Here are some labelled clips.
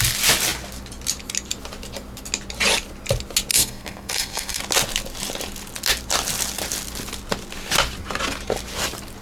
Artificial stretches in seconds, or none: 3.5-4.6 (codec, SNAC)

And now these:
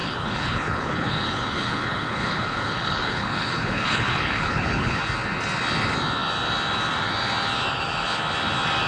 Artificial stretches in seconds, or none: 0.0-5.0 (codec, HILCodec)

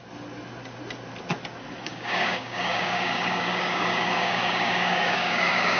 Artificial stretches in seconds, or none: 1.9-5.8 (codec, DAC)

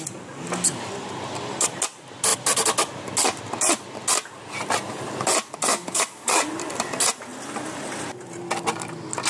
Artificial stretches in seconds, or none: 5.7-6.3 (codec, DAC)

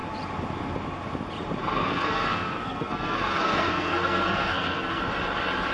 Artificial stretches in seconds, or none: 1.6-5.0 (codec, SNAC)

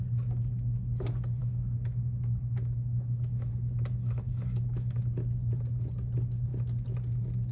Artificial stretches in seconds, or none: 1.4-3.5 (autoencoder, DAC-VAE); 4.0-5.0

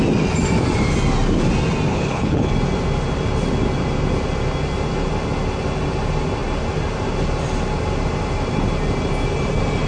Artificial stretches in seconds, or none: 1.9-2.5 (codec, HILCodec)